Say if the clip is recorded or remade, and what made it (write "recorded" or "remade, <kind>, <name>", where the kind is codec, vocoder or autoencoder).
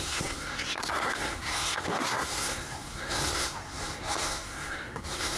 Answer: remade, codec, SNAC